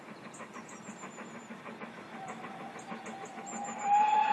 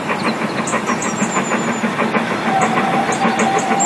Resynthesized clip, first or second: first